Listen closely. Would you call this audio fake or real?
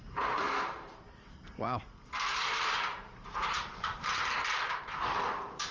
fake